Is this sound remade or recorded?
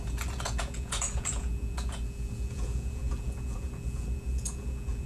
remade